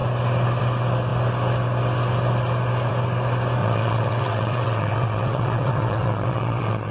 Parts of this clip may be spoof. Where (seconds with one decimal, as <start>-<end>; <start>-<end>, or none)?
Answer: 3.6-6.9